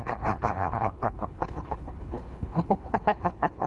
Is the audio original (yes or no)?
no